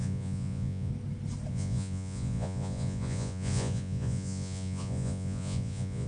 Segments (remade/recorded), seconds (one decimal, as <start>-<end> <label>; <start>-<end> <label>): 0.0-0.9 remade; 0.9-1.5 recorded; 1.5-6.1 remade